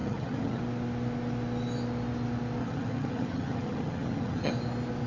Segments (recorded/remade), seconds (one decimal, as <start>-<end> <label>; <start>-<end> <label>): 0.0-0.6 remade; 0.6-2.6 recorded; 2.6-4.5 remade; 4.5-5.1 recorded